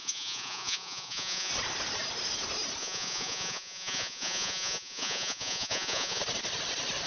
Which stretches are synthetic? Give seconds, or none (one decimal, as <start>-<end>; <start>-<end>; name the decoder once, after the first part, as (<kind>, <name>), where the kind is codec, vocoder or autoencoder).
0.0-1.5 (vocoder, Vocos); 2.8-6.2